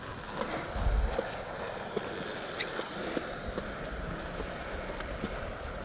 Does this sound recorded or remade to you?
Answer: recorded